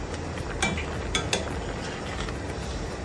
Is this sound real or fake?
real